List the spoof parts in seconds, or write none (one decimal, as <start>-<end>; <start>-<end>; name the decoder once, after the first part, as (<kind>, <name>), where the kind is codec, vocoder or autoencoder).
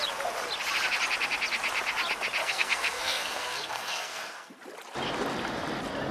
2.4-4.6 (codec, SNAC)